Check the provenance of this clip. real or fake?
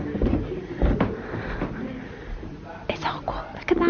real